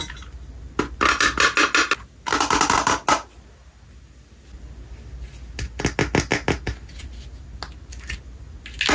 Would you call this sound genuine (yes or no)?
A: yes